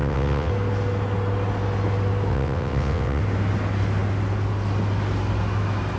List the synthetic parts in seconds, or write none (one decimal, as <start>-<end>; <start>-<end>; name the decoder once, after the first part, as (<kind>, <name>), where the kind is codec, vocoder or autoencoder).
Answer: 0.0-0.5 (vocoder, WaveNeXt); 2.3-3.2